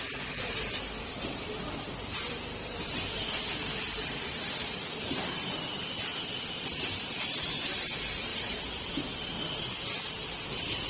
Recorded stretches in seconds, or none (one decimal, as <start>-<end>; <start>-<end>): 9.3-10.3